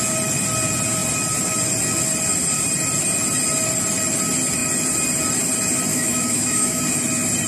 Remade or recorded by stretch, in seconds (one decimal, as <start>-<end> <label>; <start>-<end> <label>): 0.0-5.9 recorded; 5.9-6.8 remade; 6.8-7.5 recorded